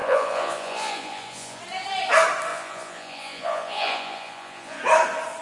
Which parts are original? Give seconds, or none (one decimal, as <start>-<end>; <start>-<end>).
1.6-2.5; 4.8-5.4